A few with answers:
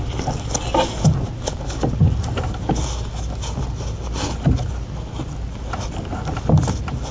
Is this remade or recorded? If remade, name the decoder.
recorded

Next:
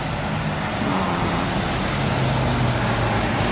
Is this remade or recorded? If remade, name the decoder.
recorded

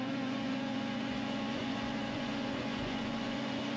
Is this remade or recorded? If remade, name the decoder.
remade, vocoder, Vocos